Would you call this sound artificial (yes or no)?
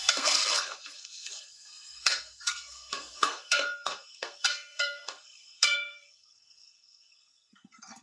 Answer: yes